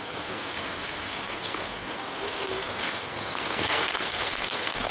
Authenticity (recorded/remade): remade